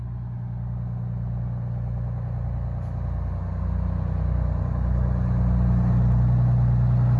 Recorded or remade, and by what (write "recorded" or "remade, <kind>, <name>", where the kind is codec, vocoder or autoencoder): recorded